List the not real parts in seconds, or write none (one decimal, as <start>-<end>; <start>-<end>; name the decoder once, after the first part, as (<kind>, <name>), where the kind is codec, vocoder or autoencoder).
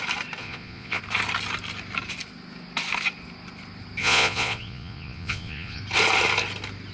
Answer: 0.4-1.0 (vocoder, Vocos); 4.0-5.8